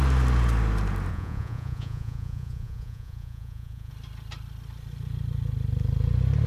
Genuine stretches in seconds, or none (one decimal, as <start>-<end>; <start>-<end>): 0.0-1.1; 3.9-6.5

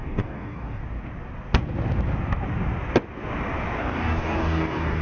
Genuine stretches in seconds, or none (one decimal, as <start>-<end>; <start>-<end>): 0.8-3.8